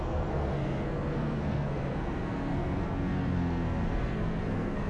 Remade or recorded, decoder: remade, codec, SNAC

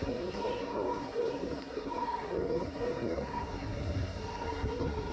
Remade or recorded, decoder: remade, codec, SNAC